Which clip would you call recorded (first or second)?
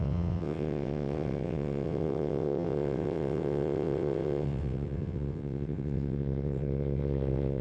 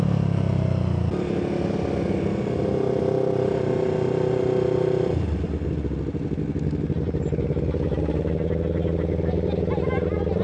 second